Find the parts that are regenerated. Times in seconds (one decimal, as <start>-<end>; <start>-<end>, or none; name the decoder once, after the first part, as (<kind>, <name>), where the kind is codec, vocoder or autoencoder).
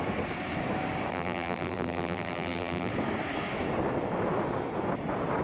1.1-2.9 (vocoder, BigVGAN v2)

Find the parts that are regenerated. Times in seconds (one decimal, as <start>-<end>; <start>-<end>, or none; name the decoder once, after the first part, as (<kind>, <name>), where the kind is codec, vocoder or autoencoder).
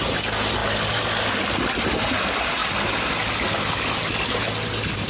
none